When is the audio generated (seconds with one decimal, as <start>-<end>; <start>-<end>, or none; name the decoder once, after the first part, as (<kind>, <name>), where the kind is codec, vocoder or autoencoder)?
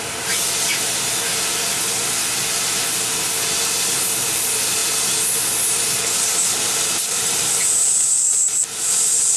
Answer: none